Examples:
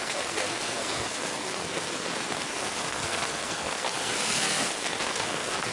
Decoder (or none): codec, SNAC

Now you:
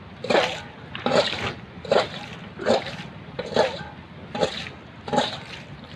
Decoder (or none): none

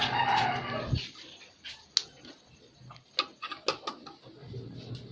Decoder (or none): none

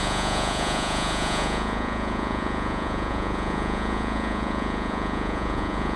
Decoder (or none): vocoder, Vocos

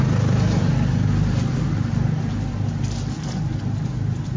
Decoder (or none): none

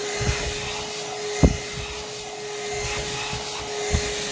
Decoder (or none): none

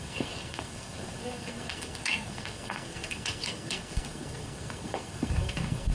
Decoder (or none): codec, SNAC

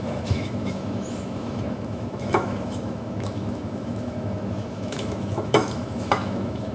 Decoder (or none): autoencoder, DAC-VAE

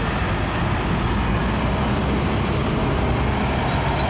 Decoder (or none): none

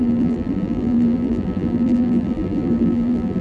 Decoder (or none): vocoder, BigVGAN v2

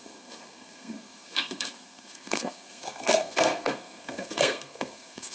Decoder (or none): codec, SNAC